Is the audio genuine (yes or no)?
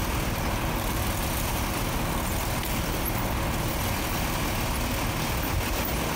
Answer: yes